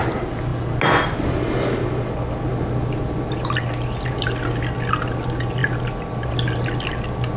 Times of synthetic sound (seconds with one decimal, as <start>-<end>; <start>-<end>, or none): none